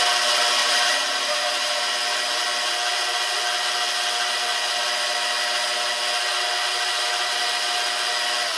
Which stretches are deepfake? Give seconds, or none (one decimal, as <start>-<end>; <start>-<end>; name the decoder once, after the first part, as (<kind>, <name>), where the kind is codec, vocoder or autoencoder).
0.6-1.9 (vocoder, BigVGAN v2)